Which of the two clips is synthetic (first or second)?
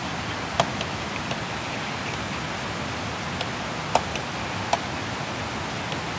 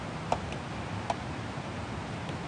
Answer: second